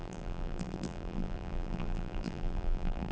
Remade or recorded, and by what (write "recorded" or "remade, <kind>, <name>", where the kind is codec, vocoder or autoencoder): remade, vocoder, BigVGAN v2